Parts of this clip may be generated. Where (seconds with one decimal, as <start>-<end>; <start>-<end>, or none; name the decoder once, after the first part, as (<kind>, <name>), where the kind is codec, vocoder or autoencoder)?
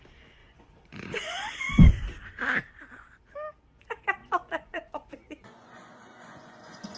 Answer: 0.4-1.9 (vocoder, Vocos); 4.2-7.0